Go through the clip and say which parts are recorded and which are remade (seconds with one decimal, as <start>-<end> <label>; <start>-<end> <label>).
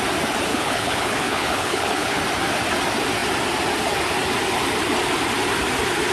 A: 0.0-0.5 recorded; 0.5-2.2 remade; 2.2-6.1 recorded